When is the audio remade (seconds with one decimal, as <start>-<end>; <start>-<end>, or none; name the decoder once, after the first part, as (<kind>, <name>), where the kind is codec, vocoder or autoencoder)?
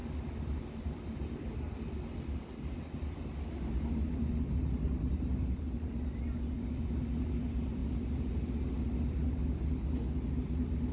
0.0-1.1 (vocoder, BigVGAN v2)